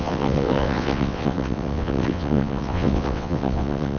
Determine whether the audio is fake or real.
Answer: fake